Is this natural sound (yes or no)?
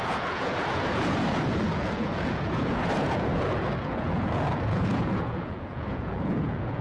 no